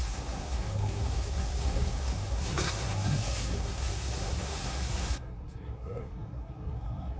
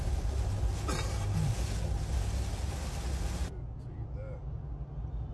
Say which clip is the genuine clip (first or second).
second